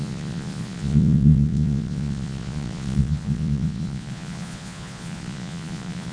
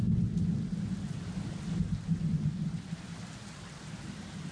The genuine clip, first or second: second